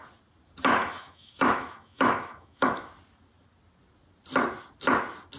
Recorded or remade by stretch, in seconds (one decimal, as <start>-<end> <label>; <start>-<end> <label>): 0.0-0.8 recorded; 0.8-2.9 remade; 2.9-5.4 recorded